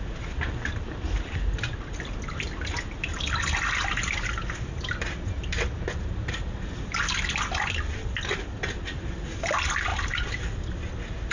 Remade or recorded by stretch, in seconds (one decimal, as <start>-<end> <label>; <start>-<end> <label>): 0.0-11.3 recorded